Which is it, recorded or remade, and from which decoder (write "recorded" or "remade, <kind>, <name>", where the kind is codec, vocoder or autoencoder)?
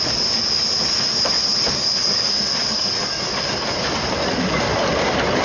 recorded